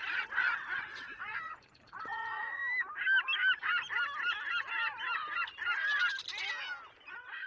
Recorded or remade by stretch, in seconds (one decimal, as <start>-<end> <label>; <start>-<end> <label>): 0.0-2.6 remade; 2.6-7.1 recorded; 7.1-7.5 remade